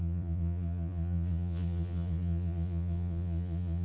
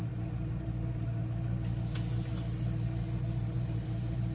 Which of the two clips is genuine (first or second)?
second